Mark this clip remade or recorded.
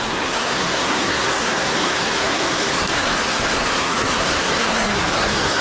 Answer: remade